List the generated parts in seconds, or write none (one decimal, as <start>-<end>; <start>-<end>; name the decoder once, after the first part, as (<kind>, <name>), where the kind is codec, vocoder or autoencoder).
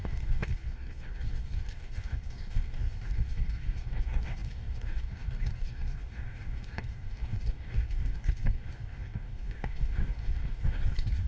0.0-11.3 (codec, DAC)